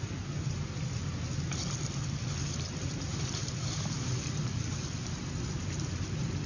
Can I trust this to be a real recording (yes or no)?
yes